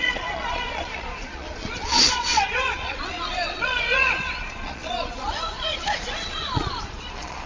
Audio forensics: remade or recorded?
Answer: remade